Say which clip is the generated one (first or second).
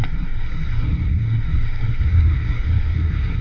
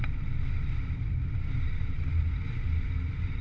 first